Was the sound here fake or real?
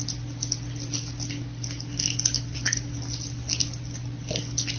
real